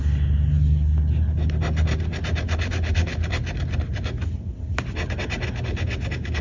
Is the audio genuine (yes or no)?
yes